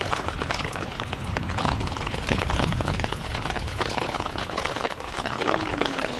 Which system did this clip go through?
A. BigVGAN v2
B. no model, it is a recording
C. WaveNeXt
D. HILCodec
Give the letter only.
D